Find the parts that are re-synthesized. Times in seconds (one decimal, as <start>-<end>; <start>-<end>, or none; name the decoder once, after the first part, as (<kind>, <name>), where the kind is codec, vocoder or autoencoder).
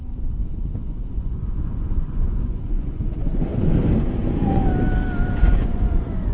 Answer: 0.8-3.5 (vocoder, Vocos); 4.1-4.7; 5.3-6.3